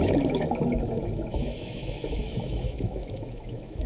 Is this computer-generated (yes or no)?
yes